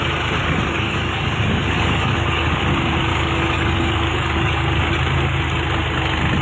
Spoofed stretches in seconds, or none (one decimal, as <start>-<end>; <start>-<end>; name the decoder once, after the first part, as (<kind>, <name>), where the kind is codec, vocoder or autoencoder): 0.4-2.6 (codec, DAC); 3.1-4.9